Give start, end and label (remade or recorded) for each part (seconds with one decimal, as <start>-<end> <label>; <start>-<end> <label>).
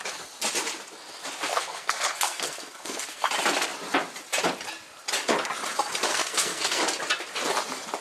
0.0-1.5 recorded; 1.5-3.3 remade; 3.3-6.1 recorded; 6.1-6.8 remade; 6.8-8.0 recorded